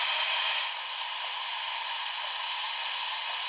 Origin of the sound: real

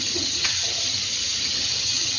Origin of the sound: fake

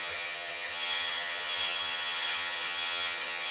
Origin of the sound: fake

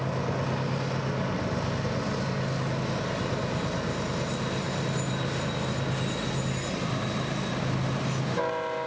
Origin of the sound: real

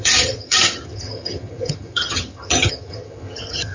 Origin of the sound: fake